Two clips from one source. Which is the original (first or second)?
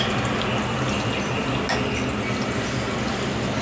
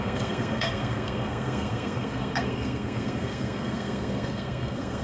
first